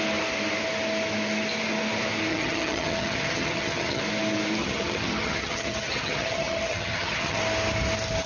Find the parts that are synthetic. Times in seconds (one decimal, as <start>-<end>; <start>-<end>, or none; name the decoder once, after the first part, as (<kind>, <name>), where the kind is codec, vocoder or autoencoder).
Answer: 2.3-4.0 (vocoder, HiFi-GAN); 4.6-7.4